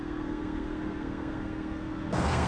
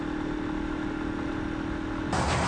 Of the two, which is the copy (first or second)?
first